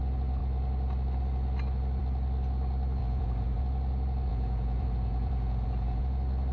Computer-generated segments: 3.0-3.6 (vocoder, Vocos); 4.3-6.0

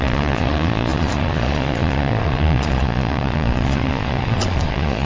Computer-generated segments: 0.0-5.0 (vocoder, Vocos)

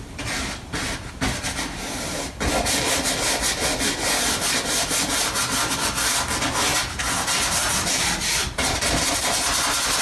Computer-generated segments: none

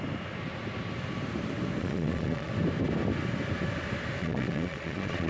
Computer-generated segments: 1.8-2.5 (vocoder, Vocos); 4.2-5.3

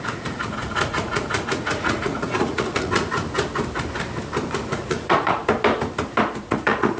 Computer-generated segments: 0.0-3.2 (vocoder, Vocos); 4.5-5.4; 6.4-7.0

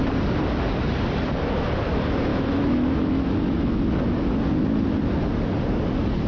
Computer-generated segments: 2.3-3.8 (autoencoder, DAC-VAE)

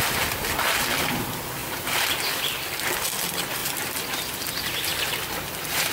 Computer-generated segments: 3.6-4.5 (vocoder, BigVGAN v2); 4.9-5.9